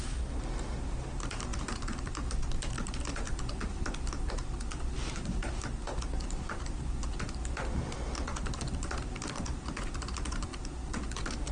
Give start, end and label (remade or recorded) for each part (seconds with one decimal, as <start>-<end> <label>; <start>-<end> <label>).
0.0-10.5 recorded; 10.5-11.5 remade